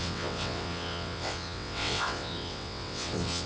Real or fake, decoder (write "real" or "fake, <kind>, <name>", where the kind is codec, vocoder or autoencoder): fake, vocoder, WaveNeXt